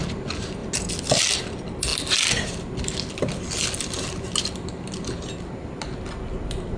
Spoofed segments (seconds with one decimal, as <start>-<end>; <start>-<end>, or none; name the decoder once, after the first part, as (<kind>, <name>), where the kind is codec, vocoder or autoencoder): none